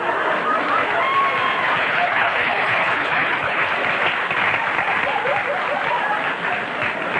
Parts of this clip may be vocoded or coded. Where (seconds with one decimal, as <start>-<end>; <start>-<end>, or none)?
1.8-3.7